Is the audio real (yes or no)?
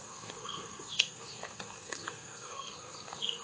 no